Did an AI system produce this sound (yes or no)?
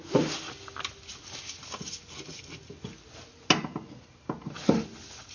no